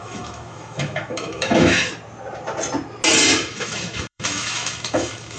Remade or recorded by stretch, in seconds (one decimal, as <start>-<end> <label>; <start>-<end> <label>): 0.0-1.9 remade; 1.9-3.5 recorded; 3.5-5.4 remade